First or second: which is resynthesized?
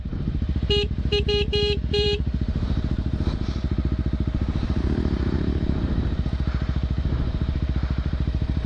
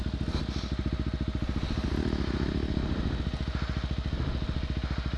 first